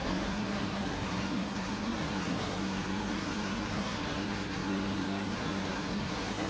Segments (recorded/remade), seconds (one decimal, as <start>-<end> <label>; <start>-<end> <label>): 0.0-6.5 remade